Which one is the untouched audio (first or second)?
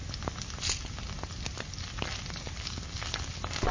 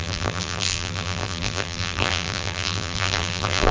first